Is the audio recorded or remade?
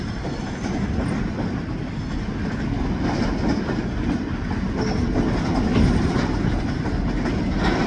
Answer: recorded